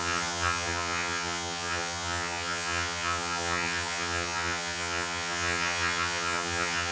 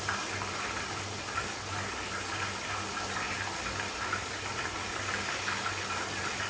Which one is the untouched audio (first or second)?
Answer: second